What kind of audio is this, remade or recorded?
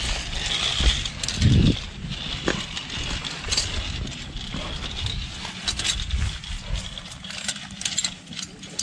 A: recorded